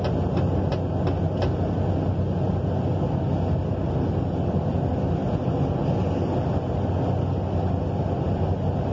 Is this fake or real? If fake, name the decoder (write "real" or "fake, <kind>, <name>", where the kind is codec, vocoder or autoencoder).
real